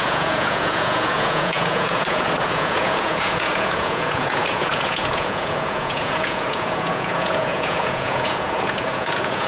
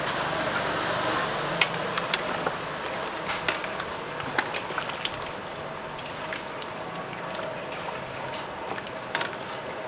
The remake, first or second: first